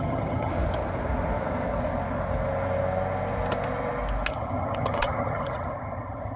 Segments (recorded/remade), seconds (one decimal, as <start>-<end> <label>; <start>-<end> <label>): 0.0-0.5 remade; 0.5-4.3 recorded; 4.3-6.4 remade